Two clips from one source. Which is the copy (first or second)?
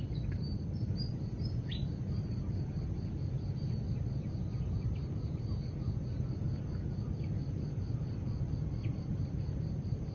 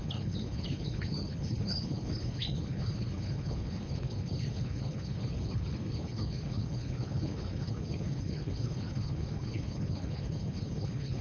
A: second